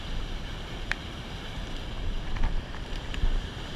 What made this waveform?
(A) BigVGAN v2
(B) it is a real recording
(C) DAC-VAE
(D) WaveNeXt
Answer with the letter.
A